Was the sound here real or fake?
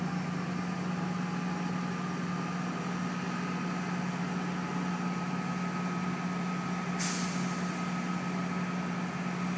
real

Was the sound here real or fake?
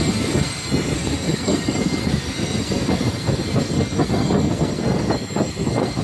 fake